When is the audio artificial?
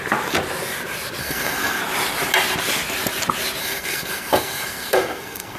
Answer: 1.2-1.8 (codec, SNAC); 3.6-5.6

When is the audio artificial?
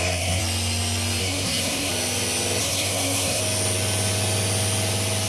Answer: 0.0-0.4 (codec, SNAC); 1.2-1.9; 2.6-3.4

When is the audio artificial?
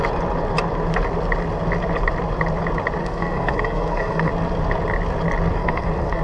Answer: 3.0-4.3 (codec, SNAC); 5.6-6.2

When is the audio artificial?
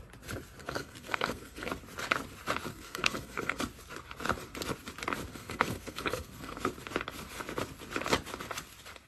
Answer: 0.6-1.7 (codec, SNAC); 2.7-3.6; 5.3-6.7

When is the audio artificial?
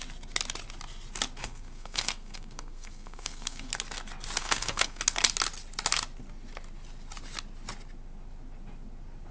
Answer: 1.4-3.7 (codec, SNAC); 4.4-5.0